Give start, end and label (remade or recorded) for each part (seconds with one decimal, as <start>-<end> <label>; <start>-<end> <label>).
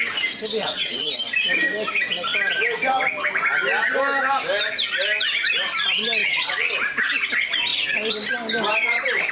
0.0-0.6 recorded; 0.6-1.2 remade; 1.2-6.2 recorded; 6.2-6.7 remade; 6.7-9.3 recorded